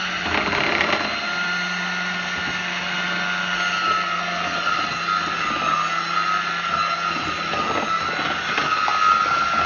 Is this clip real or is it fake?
real